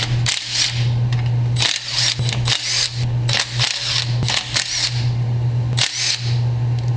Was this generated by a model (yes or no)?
no